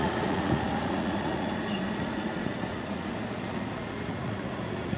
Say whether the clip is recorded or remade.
remade